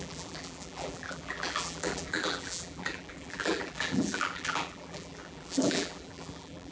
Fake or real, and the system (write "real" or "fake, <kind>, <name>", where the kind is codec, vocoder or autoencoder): fake, vocoder, BigVGAN v2